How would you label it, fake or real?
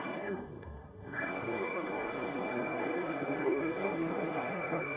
fake